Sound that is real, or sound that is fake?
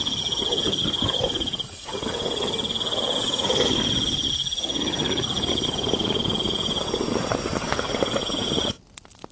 real